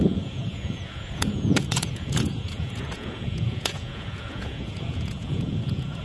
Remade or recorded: remade